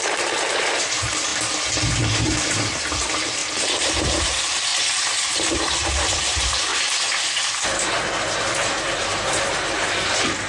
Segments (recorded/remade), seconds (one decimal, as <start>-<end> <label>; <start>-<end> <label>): 0.0-1.3 remade; 1.3-2.1 recorded; 2.1-3.4 remade; 3.4-3.9 recorded; 3.9-4.7 remade; 4.7-5.2 recorded; 5.2-6.7 remade; 6.7-8.9 recorded; 8.9-10.5 remade